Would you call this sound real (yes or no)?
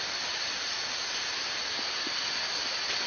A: yes